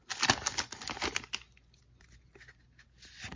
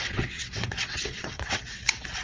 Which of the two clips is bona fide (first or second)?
first